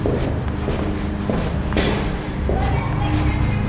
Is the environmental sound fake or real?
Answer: real